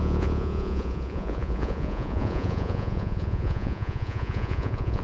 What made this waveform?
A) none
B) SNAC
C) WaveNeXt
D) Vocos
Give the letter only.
D